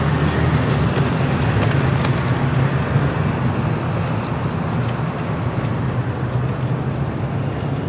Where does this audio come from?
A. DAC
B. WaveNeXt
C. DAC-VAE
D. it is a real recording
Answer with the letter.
D